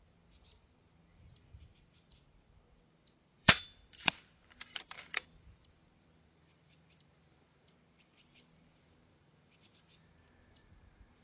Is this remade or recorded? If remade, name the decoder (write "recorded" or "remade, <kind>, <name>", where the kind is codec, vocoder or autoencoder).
remade, vocoder, BigVGAN v2